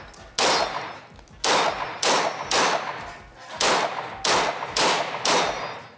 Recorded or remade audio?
recorded